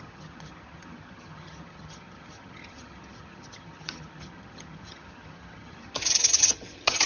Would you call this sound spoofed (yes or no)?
yes